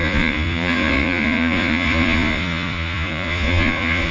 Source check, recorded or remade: remade